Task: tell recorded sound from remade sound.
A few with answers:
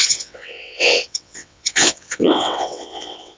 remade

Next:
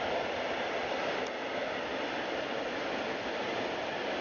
recorded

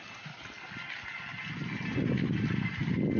recorded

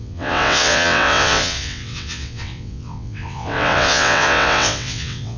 remade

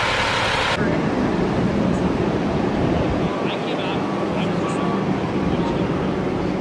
recorded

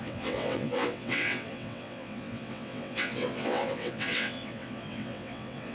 remade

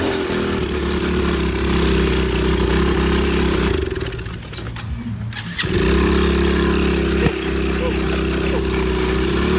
recorded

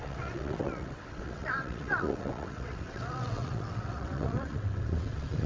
remade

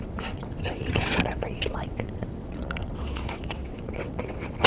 remade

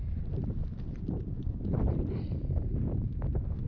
recorded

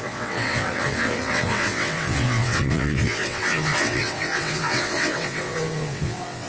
remade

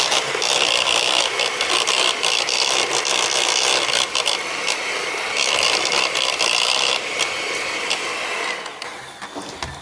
recorded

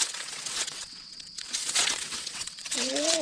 remade